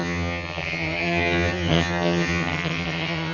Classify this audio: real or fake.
fake